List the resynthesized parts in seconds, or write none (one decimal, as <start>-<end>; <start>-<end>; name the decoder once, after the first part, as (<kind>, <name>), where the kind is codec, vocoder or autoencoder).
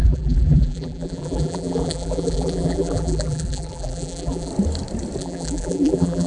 0.0-4.5 (vocoder, BigVGAN v2); 5.2-6.3